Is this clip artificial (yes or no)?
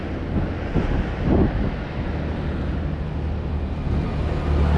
no